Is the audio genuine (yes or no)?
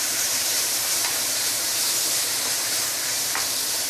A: no